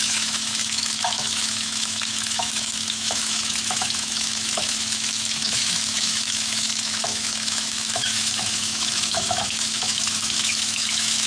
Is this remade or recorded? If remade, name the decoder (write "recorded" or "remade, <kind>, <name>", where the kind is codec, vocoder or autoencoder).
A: remade, autoencoder, DAC-VAE